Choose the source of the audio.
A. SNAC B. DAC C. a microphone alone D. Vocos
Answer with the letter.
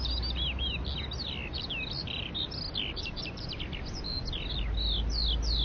C